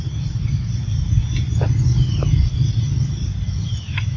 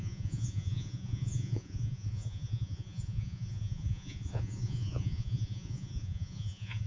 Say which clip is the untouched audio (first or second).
first